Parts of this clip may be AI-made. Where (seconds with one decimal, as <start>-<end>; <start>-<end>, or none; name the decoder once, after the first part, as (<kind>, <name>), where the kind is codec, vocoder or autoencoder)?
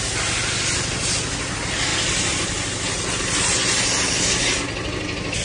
none